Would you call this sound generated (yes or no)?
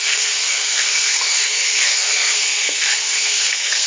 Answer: yes